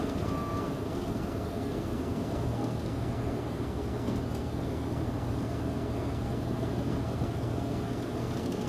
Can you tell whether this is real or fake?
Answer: fake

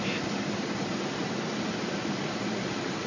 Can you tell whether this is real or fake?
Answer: real